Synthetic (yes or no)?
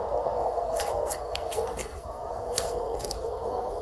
yes